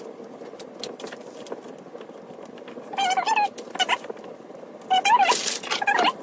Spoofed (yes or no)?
no